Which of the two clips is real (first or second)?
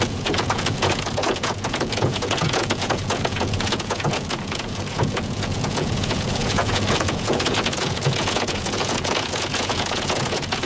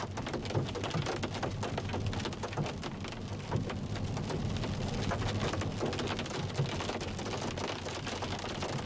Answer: second